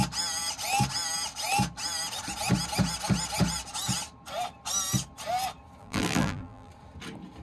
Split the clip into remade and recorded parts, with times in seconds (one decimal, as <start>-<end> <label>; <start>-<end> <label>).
0.0-5.8 recorded; 5.8-6.7 remade; 6.7-7.4 recorded

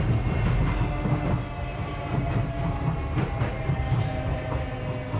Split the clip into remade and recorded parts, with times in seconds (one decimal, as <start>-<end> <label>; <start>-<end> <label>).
0.0-1.7 recorded; 1.7-4.8 remade; 4.8-5.2 recorded

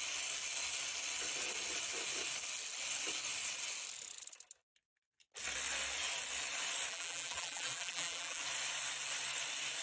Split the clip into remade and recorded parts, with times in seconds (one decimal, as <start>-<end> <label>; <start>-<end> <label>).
0.0-6.9 recorded; 6.9-8.4 remade; 8.4-9.8 recorded

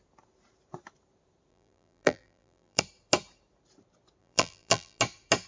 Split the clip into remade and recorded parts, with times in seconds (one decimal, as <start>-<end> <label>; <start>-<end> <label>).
0.0-1.5 recorded; 1.5-2.8 remade; 2.8-4.2 recorded; 4.2-5.0 remade; 5.0-5.5 recorded

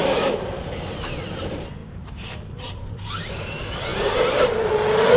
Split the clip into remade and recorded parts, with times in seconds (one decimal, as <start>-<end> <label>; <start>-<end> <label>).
0.0-0.5 remade; 0.5-1.8 recorded; 1.8-3.2 remade; 3.2-5.2 recorded

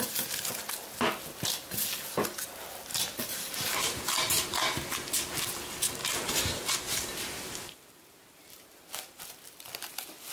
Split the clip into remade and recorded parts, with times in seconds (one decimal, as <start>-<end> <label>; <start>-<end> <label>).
0.0-2.9 recorded; 2.9-4.6 remade; 4.6-6.0 recorded; 6.0-9.2 remade; 9.2-10.3 recorded

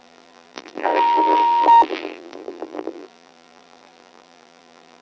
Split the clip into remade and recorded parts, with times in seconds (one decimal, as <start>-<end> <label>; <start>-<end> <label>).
0.0-5.0 remade

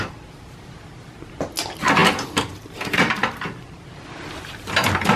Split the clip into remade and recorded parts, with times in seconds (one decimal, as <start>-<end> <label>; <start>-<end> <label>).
0.0-5.2 recorded